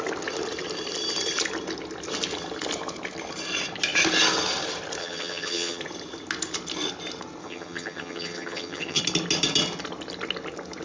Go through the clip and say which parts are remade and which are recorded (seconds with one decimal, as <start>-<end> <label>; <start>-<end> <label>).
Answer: 0.0-5.0 recorded; 5.0-5.8 remade; 5.8-7.4 recorded; 7.4-9.0 remade; 9.0-10.8 recorded